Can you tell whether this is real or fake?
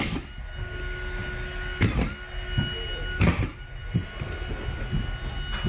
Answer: real